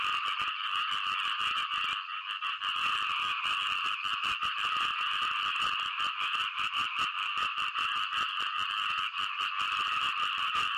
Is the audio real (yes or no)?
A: no